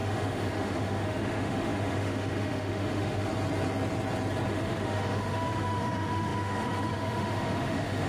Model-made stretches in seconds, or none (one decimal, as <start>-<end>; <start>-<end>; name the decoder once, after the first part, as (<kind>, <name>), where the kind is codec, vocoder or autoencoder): 0.0-3.3 (autoencoder, DAC-VAE); 4.5-8.1